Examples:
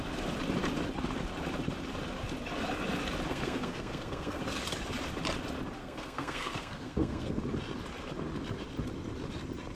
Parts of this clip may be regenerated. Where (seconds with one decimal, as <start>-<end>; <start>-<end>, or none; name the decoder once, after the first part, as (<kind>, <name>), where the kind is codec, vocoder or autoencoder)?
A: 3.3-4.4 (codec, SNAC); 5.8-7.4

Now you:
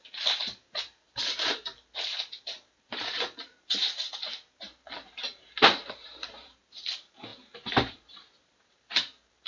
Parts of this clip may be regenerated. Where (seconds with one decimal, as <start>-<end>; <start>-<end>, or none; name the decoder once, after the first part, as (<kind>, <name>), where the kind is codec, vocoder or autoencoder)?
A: 0.0-9.5 (vocoder, BigVGAN v2)

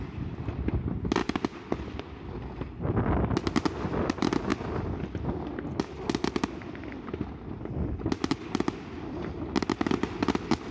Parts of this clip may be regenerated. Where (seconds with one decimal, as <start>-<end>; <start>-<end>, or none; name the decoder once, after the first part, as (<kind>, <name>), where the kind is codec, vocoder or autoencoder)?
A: none

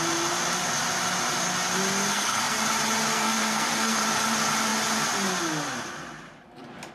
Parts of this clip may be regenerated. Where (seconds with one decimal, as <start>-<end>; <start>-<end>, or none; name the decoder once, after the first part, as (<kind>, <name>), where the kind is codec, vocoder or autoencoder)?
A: 2.1-2.6 (codec, SNAC); 3.1-4.0

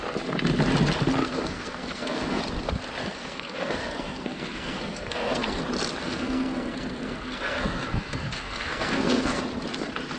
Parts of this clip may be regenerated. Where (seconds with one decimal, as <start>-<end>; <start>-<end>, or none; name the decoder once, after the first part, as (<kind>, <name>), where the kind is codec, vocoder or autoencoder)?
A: 1.2-2.4 (codec, SNAC); 3.0-5.6; 6.0-9.4

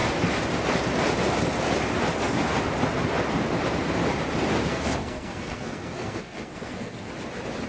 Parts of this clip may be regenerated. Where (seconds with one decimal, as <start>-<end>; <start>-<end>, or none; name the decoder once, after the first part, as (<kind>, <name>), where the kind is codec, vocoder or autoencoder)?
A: 4.7-7.1 (codec, SNAC)